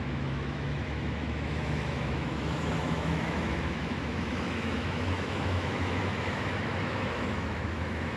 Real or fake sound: fake